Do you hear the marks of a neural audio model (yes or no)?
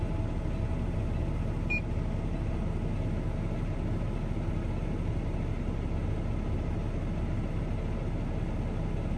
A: no